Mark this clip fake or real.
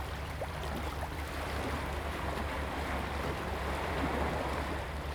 fake